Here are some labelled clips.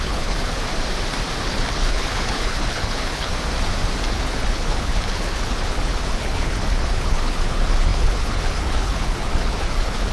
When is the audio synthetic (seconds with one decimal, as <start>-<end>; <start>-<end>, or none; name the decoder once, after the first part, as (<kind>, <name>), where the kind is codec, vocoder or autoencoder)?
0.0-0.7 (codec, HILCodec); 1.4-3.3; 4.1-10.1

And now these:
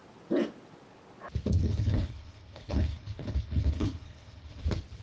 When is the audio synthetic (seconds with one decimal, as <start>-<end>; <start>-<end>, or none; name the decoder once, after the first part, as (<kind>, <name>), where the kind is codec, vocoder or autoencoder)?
1.6-4.6 (codec, HILCodec)

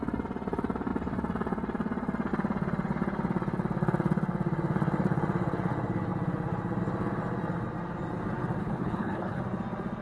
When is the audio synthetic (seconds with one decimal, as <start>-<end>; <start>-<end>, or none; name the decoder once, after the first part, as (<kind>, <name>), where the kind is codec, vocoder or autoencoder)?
8.6-9.4 (codec, HILCodec)

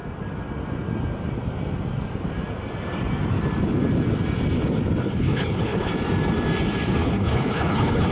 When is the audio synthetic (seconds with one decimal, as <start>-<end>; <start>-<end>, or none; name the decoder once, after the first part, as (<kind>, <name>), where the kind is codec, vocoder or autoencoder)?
5.0-5.9 (codec, HILCodec); 7.0-8.1

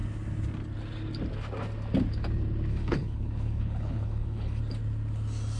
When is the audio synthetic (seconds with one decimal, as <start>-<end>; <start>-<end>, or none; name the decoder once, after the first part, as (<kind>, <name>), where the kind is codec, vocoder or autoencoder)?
2.7-4.6 (codec, HILCodec)

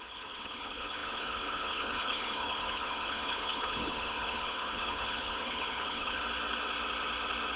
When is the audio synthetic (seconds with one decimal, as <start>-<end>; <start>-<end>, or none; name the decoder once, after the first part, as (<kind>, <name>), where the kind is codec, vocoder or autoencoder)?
0.0-6.2 (codec, HILCodec)

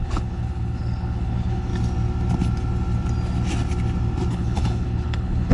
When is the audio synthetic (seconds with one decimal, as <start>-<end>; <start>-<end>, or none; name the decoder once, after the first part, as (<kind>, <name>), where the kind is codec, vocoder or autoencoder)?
0.0-1.7 (codec, HILCodec); 4.3-5.5